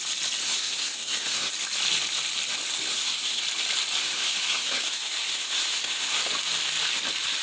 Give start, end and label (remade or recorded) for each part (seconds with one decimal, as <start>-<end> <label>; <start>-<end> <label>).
0.0-0.4 recorded; 0.4-1.5 remade; 1.5-2.9 recorded; 2.9-3.4 remade; 3.4-4.0 recorded; 4.0-6.2 remade; 6.2-7.4 recorded